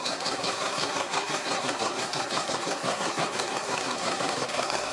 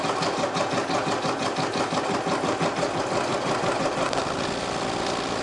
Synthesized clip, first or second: first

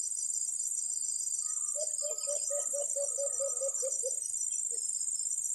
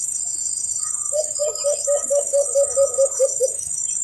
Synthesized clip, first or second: second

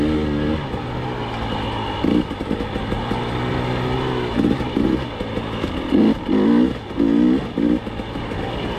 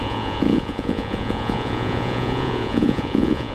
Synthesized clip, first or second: second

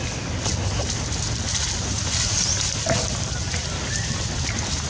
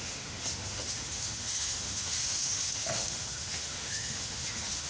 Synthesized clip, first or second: second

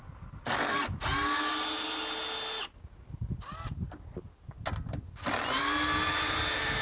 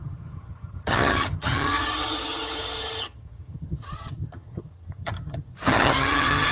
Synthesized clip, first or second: second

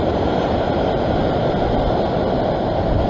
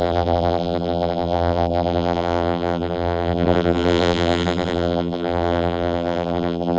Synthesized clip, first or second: second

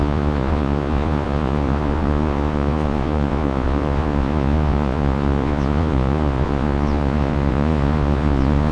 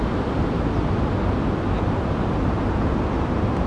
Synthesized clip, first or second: first